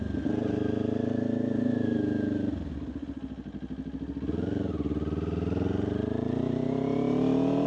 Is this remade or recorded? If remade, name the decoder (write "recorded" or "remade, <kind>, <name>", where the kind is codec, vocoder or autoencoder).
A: recorded